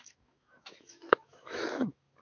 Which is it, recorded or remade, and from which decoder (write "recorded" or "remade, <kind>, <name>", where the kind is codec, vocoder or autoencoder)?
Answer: remade, autoencoder, DAC-VAE